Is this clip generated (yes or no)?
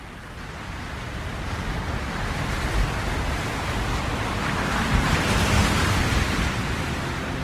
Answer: no